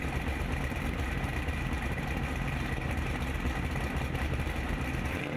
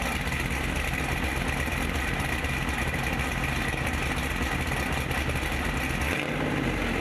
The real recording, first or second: second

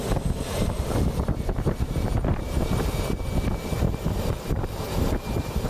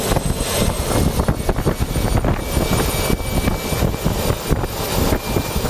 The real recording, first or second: second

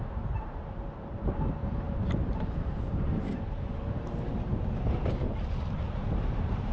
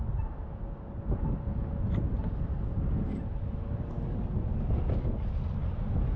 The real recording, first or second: second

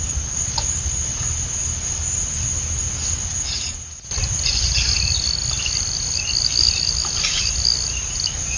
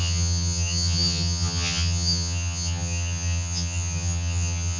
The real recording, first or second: first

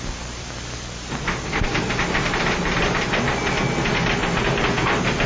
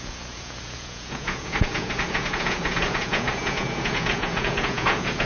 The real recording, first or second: first